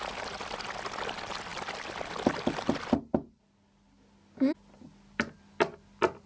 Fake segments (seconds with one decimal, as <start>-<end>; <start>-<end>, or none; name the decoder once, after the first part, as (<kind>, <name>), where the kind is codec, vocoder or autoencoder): none